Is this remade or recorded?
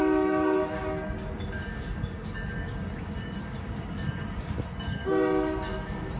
remade